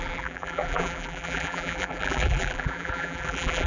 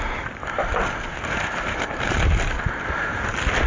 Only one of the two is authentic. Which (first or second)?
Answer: second